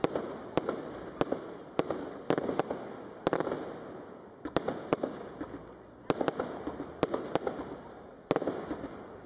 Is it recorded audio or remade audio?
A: recorded